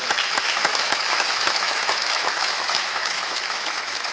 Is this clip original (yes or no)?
no